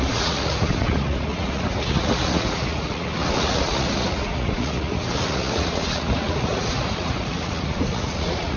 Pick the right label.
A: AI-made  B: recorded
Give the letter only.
A